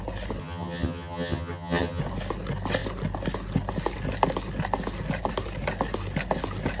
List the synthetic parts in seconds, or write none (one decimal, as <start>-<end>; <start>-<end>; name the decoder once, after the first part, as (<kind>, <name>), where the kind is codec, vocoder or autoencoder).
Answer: 0.4-2.0 (vocoder, HiFi-GAN)